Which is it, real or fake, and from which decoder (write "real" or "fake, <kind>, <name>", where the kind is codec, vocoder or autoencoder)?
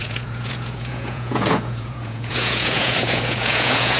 fake, vocoder, Vocos